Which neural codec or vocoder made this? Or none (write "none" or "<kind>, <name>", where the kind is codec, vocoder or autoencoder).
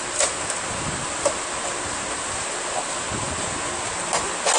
none